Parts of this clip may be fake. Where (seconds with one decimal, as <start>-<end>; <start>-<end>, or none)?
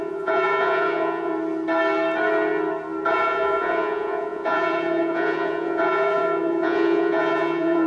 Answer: 0.0-1.3; 3.1-7.9